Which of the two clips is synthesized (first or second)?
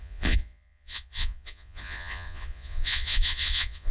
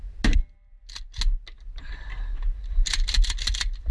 first